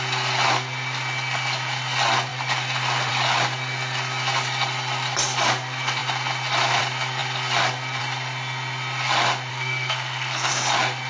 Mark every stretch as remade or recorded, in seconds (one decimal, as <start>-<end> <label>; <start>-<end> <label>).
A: 0.0-9.5 recorded; 9.5-10.5 remade; 10.5-11.1 recorded